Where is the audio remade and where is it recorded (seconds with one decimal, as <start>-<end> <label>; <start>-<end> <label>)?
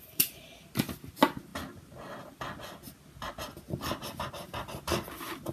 0.0-5.5 recorded